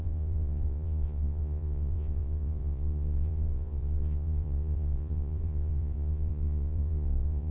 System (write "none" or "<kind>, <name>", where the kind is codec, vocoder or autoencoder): vocoder, Vocos